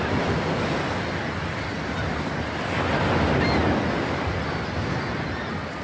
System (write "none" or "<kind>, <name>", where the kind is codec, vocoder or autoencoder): none